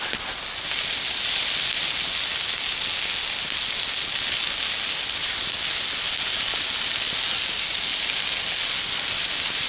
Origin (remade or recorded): recorded